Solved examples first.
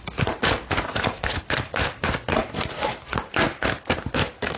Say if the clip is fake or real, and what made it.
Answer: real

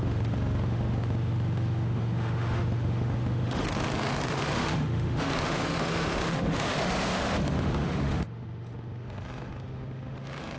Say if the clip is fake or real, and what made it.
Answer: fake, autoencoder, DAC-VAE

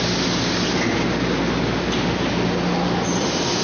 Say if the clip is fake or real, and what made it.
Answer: real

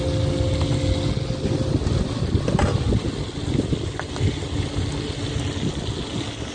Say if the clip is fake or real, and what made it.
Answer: real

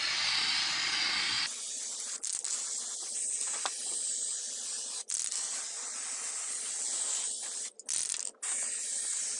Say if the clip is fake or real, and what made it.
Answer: real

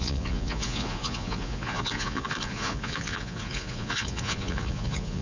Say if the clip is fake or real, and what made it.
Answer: fake, vocoder, Vocos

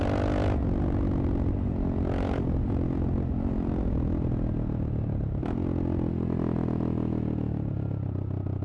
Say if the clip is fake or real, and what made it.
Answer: real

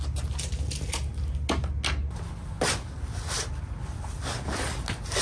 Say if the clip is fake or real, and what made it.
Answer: real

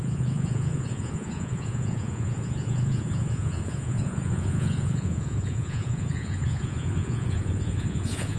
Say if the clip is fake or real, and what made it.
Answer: fake, vocoder, Vocos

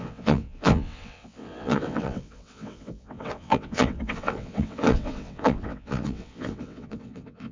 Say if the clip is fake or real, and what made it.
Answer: fake, vocoder, WaveNeXt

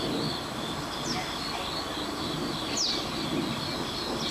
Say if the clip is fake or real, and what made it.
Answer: real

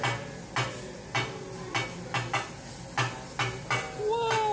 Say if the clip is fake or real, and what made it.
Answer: real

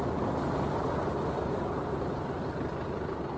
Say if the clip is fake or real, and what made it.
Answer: fake, vocoder, BigVGAN v2